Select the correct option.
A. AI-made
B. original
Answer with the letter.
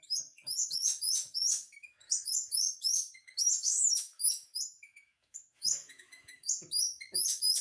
A